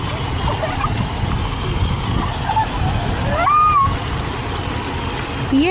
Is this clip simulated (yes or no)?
no